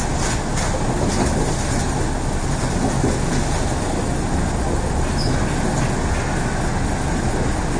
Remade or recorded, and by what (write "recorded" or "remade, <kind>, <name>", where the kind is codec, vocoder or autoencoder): recorded